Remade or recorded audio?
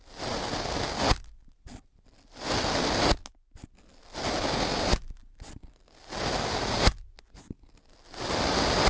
recorded